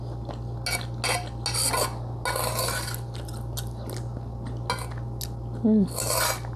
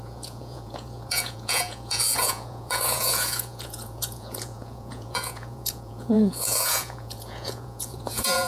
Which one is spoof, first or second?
second